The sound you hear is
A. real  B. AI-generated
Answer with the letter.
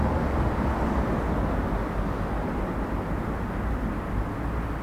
A